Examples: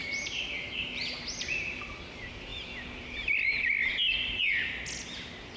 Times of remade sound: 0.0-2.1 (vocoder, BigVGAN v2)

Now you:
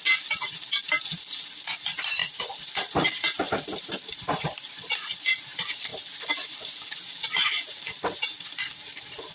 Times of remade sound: 2.2-5.2 (vocoder, BigVGAN v2)

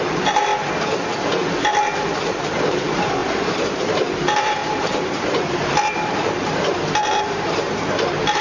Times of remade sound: 0.0-0.5 (vocoder, BigVGAN v2); 2.3-8.4

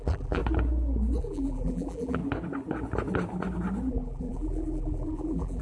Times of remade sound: 0.0-0.4 (vocoder, BigVGAN v2); 1.2-2.2; 3.9-5.6

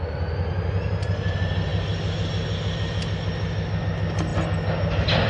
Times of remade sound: none

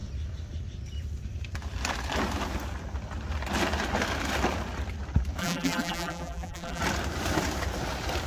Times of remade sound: 5.4-6.8 (vocoder, BigVGAN v2)